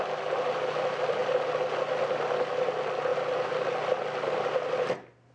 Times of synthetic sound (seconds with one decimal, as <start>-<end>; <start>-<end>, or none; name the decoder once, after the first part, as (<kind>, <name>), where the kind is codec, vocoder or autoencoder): none